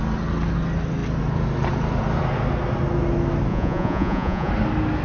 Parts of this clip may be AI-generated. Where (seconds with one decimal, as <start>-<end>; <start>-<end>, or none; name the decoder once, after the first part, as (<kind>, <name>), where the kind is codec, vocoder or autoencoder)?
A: 3.5-4.5 (vocoder, Vocos)